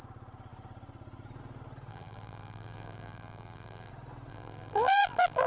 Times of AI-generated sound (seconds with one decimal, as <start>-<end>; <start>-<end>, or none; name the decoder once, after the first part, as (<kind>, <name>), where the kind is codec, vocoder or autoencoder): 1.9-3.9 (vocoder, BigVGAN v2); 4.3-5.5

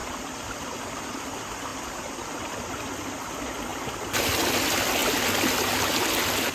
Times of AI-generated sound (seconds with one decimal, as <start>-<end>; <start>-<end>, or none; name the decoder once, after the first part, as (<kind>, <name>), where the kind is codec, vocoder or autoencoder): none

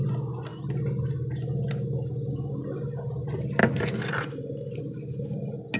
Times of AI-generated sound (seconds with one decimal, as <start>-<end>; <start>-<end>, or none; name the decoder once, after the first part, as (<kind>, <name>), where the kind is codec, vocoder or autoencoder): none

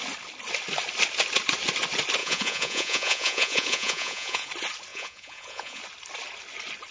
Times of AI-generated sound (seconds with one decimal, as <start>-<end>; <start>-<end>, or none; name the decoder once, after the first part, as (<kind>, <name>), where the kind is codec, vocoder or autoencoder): 2.2-4.5 (vocoder, Vocos); 4.9-5.8

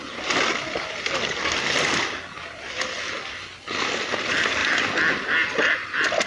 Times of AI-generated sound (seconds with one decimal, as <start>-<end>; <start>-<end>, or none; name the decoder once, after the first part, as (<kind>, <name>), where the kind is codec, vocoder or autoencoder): none

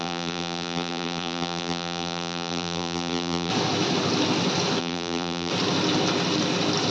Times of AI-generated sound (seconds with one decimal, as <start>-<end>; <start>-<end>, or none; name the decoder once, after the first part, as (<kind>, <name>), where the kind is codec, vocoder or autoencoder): 0.0-3.5 (vocoder, BigVGAN v2); 4.8-5.5

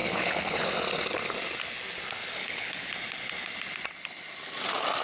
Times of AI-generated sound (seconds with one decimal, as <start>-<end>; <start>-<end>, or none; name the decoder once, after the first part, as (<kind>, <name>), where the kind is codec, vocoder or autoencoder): 0.0-0.6 (codec, HILCodec); 2.4-2.9

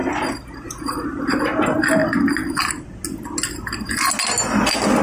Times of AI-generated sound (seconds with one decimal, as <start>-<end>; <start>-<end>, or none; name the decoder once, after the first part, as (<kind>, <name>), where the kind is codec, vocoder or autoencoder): none